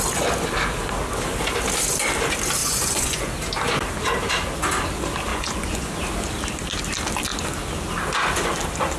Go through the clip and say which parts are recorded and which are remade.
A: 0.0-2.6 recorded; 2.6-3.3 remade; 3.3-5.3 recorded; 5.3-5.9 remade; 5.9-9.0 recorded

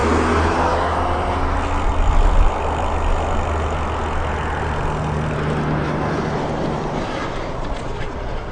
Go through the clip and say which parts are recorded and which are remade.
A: 0.0-7.2 recorded; 7.2-8.5 remade